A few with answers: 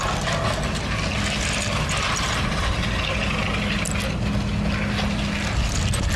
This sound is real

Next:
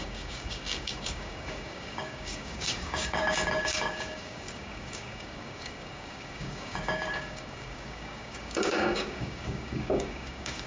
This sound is fake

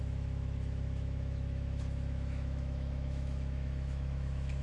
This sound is fake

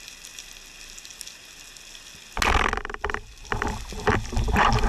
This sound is real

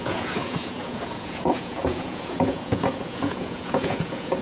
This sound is fake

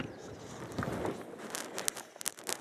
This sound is real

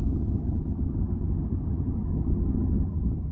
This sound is fake